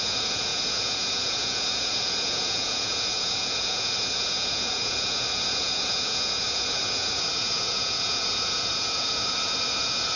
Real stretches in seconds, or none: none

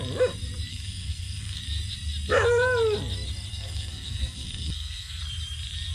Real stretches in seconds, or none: 0.0-0.7; 1.6-3.5; 5.2-5.9